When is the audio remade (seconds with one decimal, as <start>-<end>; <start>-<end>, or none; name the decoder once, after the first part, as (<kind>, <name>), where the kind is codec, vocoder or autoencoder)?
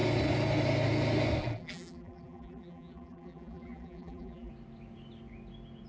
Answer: 1.4-4.5 (vocoder, BigVGAN v2)